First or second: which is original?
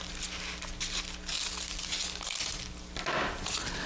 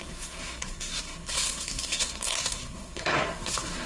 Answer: first